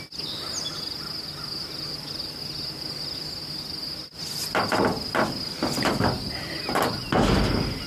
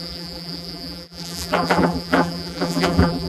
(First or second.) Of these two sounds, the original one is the first